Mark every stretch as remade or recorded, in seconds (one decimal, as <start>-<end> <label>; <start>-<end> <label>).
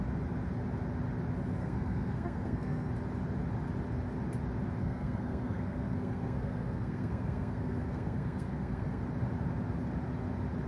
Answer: 0.0-1.6 recorded; 1.6-2.9 remade; 2.9-4.8 recorded; 4.8-9.0 remade; 9.0-10.7 recorded